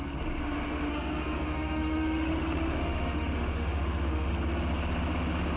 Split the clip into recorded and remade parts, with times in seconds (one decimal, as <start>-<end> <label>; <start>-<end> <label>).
0.0-0.9 recorded; 0.9-4.3 remade; 4.3-5.6 recorded